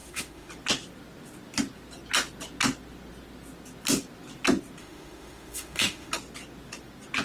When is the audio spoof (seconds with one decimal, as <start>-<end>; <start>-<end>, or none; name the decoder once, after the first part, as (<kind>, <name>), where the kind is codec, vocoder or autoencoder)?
0.0-0.5 (autoencoder, DAC-VAE); 4.8-6.1